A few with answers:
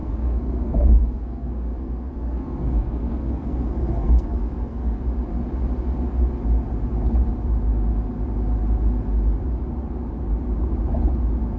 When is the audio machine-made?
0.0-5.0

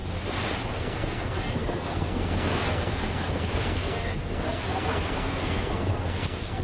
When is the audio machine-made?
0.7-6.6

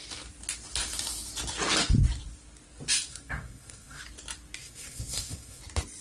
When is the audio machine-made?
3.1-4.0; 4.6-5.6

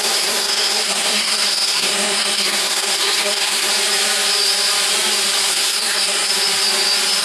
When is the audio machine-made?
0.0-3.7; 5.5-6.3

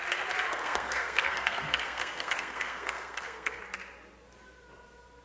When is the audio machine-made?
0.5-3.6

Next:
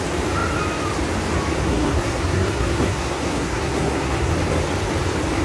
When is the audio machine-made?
1.7-4.3

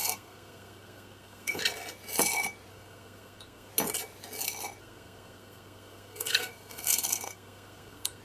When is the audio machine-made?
0.0-1.6; 2.7-3.7; 4.8-8.2

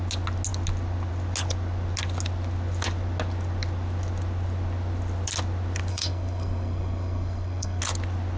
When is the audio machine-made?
5.9-7.8